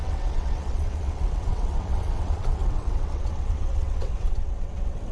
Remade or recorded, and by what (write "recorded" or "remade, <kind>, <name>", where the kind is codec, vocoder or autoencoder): remade, vocoder, WaveNeXt